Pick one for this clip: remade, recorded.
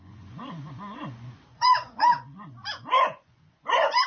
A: remade